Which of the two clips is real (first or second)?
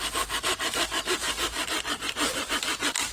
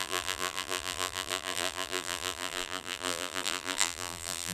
first